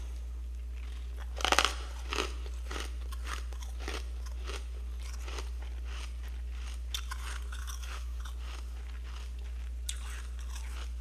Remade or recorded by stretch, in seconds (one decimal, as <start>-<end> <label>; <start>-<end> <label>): 0.0-7.6 recorded; 7.6-8.2 remade; 8.2-11.0 recorded